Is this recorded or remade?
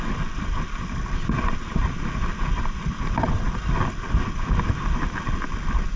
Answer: recorded